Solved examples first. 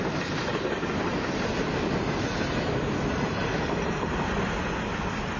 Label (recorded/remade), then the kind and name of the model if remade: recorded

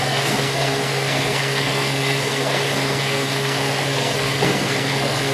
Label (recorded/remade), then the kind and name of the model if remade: remade, codec, SNAC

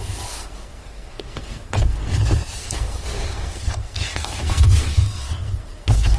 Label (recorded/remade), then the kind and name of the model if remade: remade, codec, SNAC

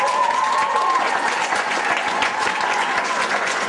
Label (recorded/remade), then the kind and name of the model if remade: remade, vocoder, Vocos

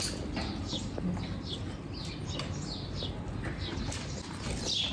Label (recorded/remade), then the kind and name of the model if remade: recorded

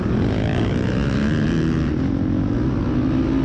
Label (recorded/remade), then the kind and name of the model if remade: recorded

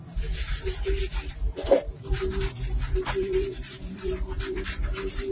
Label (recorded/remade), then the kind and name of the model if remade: remade, vocoder, BigVGAN v2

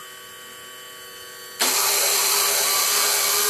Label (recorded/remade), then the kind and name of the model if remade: recorded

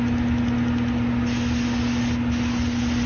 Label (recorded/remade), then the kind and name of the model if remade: recorded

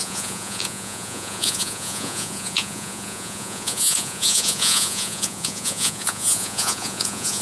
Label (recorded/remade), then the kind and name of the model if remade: remade, vocoder, Vocos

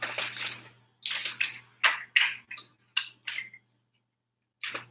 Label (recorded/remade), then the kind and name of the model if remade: recorded